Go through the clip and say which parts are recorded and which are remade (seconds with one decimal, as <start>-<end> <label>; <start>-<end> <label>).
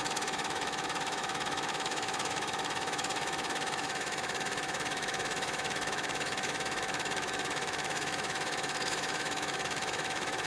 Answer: 0.0-10.5 remade